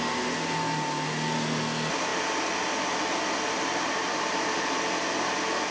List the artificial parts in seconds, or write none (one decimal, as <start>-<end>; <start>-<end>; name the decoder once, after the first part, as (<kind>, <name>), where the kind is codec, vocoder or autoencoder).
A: none